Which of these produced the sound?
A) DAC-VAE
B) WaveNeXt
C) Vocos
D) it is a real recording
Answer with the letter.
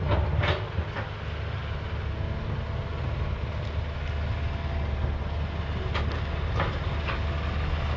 D